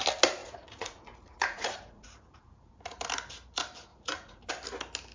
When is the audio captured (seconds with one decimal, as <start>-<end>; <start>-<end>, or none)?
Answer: 0.0-0.4; 2.7-3.9; 4.5-5.1

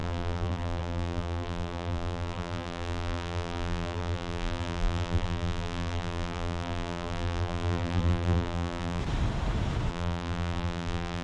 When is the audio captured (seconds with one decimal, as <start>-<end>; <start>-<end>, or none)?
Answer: 9.0-9.9